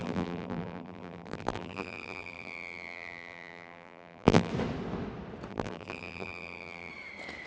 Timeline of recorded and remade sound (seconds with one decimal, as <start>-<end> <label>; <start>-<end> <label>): 0.0-4.5 remade; 4.5-5.5 recorded; 5.5-6.9 remade; 6.9-7.5 recorded

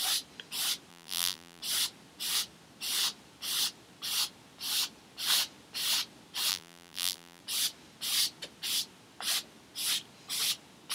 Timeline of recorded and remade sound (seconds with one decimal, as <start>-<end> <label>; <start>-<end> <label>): 0.0-0.9 recorded; 0.9-1.6 remade; 1.6-6.5 recorded; 6.5-7.4 remade; 7.4-10.9 recorded

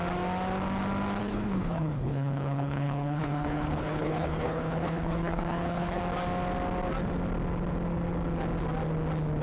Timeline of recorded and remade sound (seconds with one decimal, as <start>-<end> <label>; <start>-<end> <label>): 0.0-1.2 recorded; 1.2-6.0 remade; 6.0-9.4 recorded

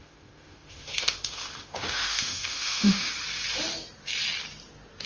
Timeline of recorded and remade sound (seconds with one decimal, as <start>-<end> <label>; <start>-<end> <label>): 0.0-3.1 remade; 3.1-5.1 recorded

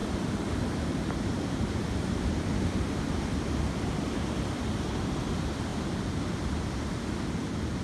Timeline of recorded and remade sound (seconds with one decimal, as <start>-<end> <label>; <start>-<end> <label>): 0.0-7.8 recorded